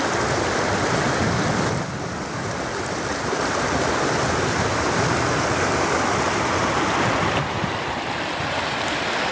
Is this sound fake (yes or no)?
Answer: yes